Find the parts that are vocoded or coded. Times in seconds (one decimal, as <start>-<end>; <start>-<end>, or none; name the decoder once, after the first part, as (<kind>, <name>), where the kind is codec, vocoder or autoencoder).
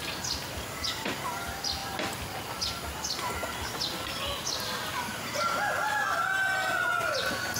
none